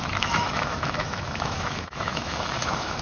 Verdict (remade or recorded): remade